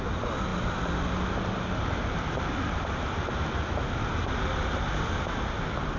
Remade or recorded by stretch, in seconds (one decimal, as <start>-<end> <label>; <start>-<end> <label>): 0.0-6.0 recorded